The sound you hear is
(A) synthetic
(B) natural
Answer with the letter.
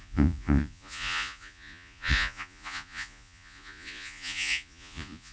A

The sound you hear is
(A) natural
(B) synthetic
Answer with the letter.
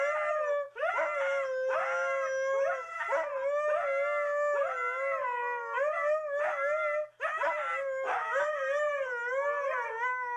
A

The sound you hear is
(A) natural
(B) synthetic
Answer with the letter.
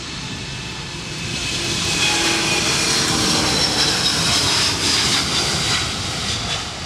A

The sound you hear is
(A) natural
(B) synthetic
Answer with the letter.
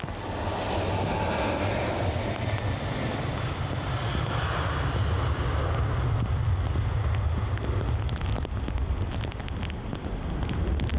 A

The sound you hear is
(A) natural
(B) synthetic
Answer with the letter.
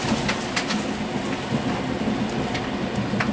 A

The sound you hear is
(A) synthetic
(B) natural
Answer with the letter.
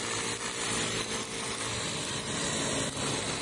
B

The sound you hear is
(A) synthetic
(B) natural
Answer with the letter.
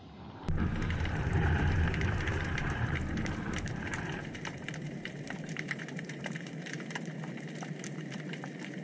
A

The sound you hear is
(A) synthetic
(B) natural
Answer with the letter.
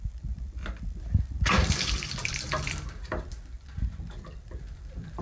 A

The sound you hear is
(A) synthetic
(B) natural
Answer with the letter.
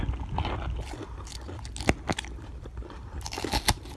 B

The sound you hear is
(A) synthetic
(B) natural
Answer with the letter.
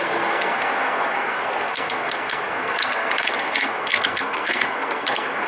A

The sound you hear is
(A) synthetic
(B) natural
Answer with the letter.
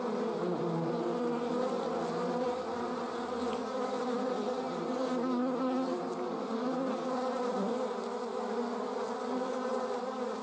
B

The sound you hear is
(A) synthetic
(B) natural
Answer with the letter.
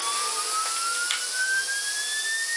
B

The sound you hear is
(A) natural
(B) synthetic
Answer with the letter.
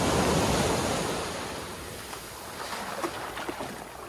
A